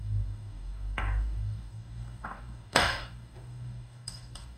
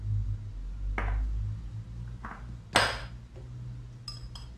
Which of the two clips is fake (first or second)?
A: first